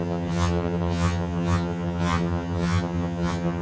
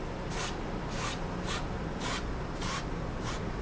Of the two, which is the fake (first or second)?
first